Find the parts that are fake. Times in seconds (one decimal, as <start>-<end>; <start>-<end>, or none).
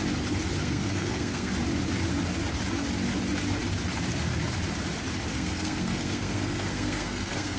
0.6-1.5; 5.3-7.6